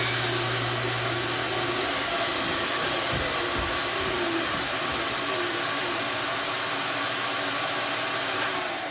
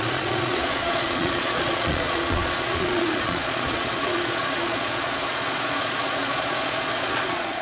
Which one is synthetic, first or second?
second